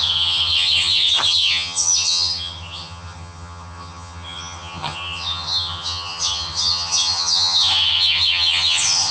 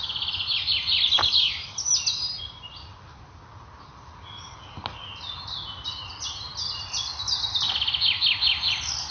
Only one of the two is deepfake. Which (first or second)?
first